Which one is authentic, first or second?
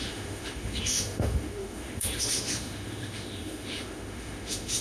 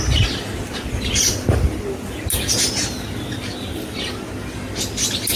second